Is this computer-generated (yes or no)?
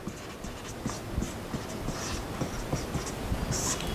no